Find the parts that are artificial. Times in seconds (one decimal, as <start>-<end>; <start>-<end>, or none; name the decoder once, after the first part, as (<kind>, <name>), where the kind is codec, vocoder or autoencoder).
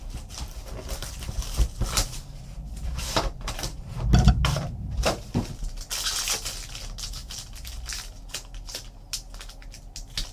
1.0-5.2 (vocoder, BigVGAN v2)